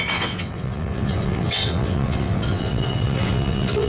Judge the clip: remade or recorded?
remade